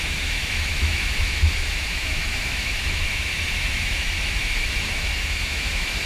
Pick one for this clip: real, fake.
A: fake